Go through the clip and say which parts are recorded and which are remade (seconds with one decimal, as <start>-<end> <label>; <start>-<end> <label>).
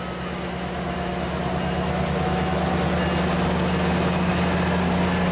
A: 0.0-5.3 recorded